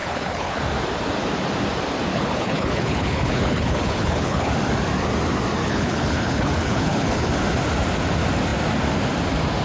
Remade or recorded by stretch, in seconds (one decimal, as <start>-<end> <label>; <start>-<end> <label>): 0.0-0.6 remade; 0.6-2.1 recorded; 2.1-4.5 remade; 4.5-5.6 recorded; 5.6-7.3 remade; 7.3-9.6 recorded